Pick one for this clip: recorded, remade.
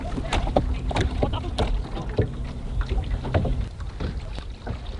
recorded